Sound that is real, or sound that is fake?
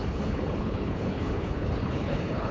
fake